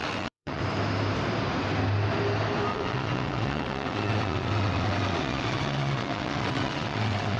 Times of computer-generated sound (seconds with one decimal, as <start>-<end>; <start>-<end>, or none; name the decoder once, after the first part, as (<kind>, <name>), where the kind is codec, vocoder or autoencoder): 0.0-0.6 (vocoder, WaveNeXt); 2.7-7.4